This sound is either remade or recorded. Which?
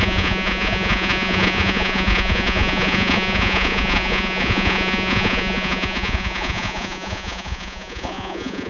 remade